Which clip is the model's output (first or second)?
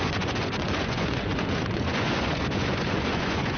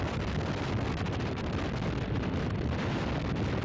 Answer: first